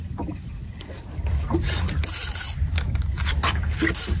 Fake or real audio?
real